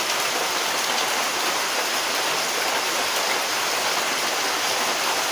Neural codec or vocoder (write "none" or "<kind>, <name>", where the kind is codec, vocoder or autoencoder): none